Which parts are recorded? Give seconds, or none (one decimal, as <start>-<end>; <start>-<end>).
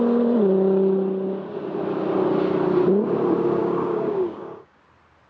0.0-3.6; 4.8-5.3